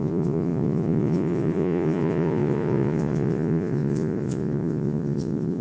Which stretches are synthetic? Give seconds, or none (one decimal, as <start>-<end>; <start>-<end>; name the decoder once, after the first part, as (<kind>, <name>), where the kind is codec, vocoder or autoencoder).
0.0-5.6 (vocoder, Vocos)